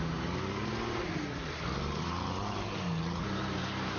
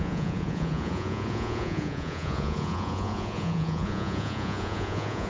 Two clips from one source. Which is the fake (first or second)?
second